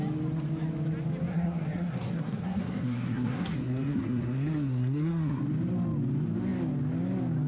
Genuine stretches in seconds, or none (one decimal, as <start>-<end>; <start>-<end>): 0.0-1.3; 5.4-7.5